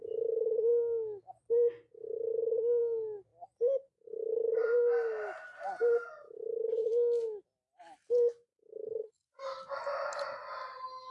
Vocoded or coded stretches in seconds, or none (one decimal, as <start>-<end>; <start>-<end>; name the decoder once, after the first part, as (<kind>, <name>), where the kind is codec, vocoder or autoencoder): none